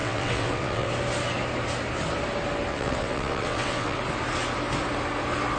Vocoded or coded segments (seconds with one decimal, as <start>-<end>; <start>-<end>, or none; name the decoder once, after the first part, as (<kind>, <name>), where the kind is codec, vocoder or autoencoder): 0.0-0.9 (vocoder, WaveNeXt); 2.7-4.0